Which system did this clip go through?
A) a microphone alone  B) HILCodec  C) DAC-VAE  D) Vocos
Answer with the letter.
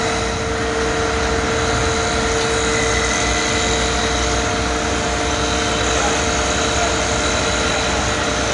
A